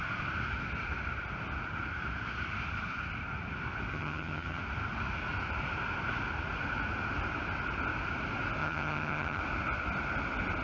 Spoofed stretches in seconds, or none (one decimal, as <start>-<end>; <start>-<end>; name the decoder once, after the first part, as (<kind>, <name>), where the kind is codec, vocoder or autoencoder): 3.9-4.6 (vocoder, HiFi-GAN); 8.6-9.4